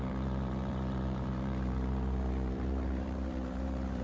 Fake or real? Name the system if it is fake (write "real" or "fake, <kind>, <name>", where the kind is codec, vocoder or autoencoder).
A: fake, vocoder, BigVGAN v2